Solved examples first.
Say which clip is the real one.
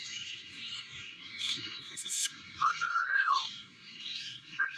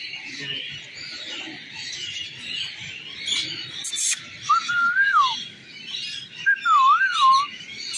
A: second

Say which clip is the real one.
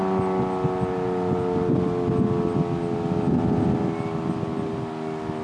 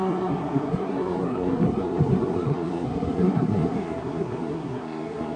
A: first